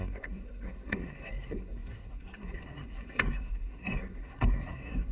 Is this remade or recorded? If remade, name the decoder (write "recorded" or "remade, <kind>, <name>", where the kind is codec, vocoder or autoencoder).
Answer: remade, codec, SNAC